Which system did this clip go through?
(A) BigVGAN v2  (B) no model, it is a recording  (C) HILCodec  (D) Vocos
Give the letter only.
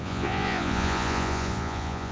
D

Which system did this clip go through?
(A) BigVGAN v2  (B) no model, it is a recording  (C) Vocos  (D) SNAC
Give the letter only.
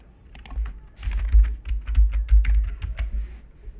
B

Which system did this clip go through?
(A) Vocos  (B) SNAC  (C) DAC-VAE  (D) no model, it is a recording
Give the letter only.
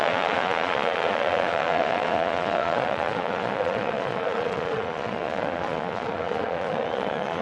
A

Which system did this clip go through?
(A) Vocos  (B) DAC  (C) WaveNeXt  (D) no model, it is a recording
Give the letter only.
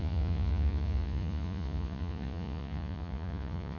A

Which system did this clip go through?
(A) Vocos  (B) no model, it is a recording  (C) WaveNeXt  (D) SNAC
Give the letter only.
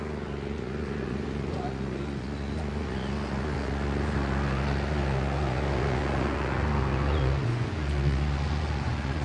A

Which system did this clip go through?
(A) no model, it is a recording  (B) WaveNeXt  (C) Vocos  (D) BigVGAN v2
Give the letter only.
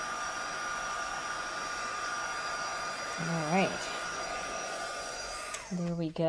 C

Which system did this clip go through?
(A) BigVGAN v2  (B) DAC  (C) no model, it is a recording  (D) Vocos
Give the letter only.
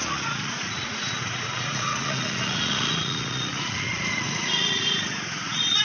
D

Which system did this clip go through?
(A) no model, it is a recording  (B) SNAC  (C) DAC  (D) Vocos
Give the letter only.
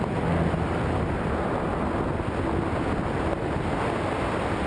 A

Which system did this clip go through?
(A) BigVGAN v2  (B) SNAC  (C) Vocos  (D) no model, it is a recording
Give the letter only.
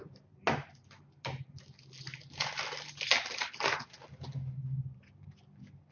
D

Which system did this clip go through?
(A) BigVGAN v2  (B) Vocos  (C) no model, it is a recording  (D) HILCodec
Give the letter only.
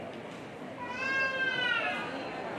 C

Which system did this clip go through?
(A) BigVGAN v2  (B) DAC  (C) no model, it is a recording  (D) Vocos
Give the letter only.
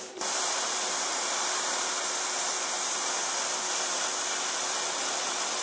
C